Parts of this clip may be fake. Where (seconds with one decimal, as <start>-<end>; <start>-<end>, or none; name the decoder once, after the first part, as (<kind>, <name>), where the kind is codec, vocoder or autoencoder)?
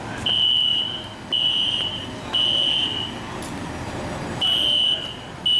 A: none